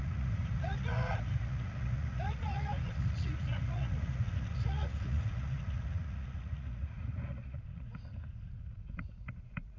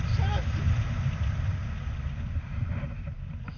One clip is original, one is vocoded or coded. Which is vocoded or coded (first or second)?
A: first